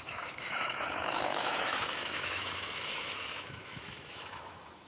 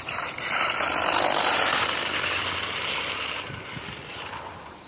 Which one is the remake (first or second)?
first